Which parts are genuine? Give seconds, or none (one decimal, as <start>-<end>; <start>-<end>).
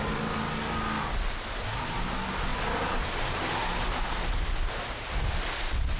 0.0-6.0